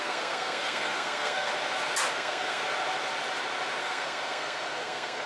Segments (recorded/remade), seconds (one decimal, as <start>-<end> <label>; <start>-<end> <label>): 0.0-1.5 remade; 1.5-2.1 recorded; 2.1-2.6 remade; 2.6-3.8 recorded; 3.8-5.3 remade